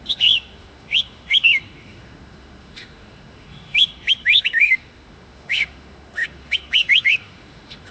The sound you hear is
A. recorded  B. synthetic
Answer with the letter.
B